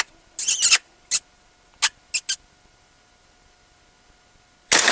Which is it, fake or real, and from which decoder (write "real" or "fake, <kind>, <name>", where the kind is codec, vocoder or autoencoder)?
real